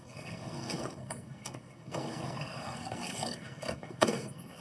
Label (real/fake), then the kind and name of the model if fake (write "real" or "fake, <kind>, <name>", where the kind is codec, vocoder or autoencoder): fake, codec, SNAC